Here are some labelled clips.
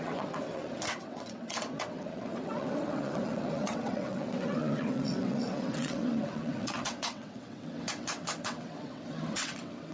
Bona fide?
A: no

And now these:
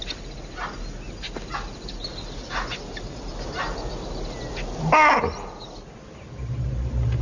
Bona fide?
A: yes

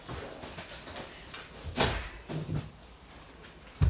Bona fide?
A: yes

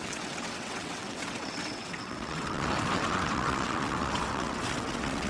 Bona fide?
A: no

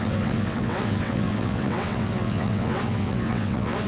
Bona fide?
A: no